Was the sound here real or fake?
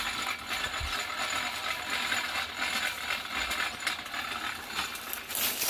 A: real